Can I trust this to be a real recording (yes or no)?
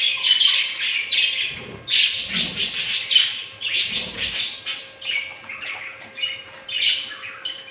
yes